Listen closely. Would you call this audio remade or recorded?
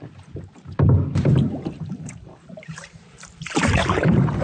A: remade